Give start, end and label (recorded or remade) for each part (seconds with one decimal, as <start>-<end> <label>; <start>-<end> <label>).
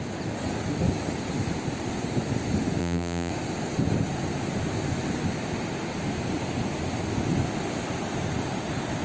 0.0-2.8 recorded; 2.8-3.3 remade; 3.3-9.0 recorded